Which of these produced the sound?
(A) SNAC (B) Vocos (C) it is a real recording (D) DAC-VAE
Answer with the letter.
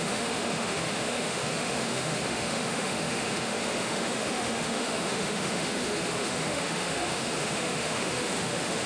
D